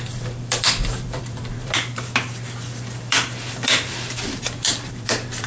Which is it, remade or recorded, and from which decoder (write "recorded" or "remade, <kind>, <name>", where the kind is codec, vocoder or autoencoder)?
remade, vocoder, BigVGAN v2